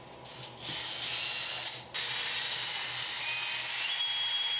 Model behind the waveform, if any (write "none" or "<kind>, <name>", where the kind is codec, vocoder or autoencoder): none